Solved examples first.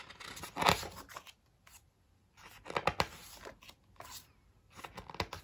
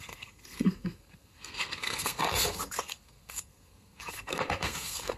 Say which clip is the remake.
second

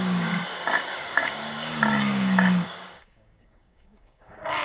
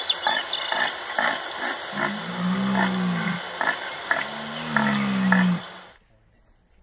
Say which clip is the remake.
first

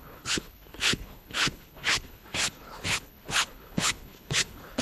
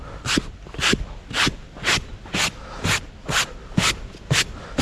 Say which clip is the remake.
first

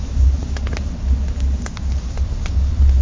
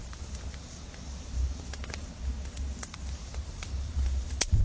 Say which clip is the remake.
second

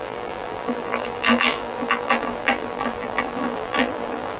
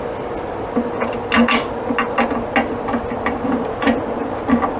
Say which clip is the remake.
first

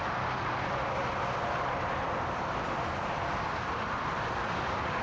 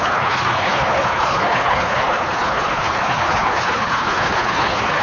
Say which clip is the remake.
second